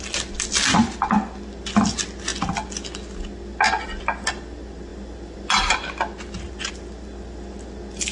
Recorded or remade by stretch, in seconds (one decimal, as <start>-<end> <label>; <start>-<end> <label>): 0.0-8.1 recorded